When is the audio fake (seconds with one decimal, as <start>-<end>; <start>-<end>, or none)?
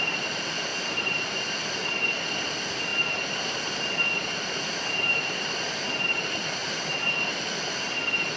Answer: 0.7-1.3; 6.6-7.6